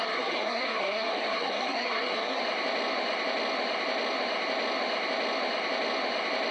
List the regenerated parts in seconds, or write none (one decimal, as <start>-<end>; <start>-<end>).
0.0-2.4